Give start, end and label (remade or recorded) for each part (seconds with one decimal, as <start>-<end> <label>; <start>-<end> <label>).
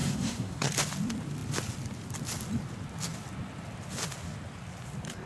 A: 0.0-0.7 remade; 0.7-5.3 recorded